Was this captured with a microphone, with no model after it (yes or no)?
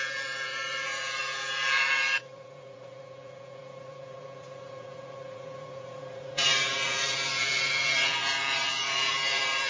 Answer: no